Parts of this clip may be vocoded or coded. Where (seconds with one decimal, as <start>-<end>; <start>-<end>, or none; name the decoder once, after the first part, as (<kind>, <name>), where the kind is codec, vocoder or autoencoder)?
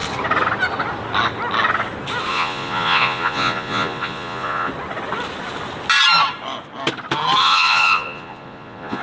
2.3-4.7 (vocoder, Vocos); 7.4-9.0